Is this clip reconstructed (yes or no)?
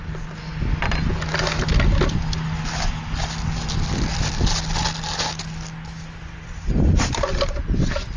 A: no